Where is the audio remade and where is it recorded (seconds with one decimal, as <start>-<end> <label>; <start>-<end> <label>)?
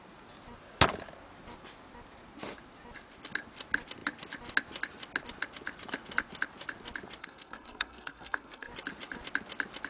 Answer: 0.0-7.2 recorded; 7.2-8.7 remade; 8.7-9.9 recorded